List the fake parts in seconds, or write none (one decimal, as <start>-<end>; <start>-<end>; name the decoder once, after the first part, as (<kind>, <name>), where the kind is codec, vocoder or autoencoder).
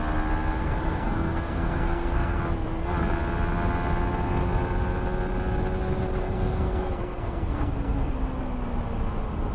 0.6-2.4 (codec, SNAC); 6.2-8.1